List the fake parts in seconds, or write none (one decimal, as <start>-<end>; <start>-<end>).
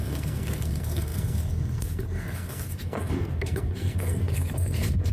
0.0-5.1